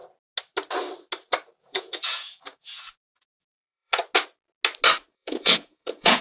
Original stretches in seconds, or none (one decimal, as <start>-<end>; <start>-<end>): 0.0-1.6; 4.0-5.1